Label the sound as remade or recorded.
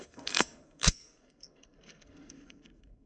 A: remade